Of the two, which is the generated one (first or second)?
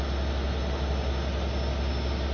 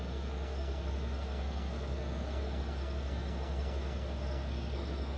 second